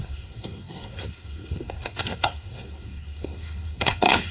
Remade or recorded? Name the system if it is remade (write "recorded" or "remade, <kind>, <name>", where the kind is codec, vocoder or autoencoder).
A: remade, codec, SNAC